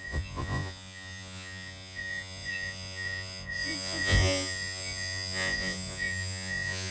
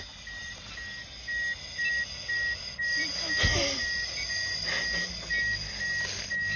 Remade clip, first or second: first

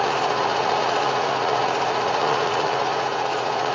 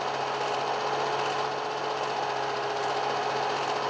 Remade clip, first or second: first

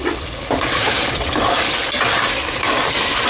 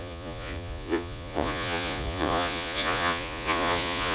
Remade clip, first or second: second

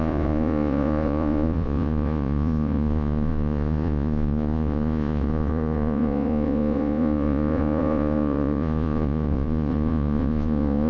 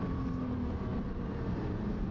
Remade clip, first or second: first